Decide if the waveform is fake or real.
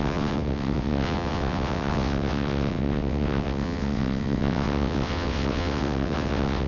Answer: fake